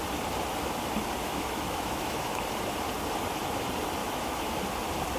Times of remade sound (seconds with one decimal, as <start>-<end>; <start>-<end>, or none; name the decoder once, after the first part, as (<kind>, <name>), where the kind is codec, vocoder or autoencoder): 1.2-2.4 (autoencoder, DAC-VAE); 4.0-4.6